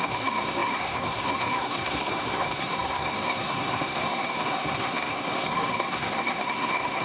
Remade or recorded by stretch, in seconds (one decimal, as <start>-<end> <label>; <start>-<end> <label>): 0.0-7.0 remade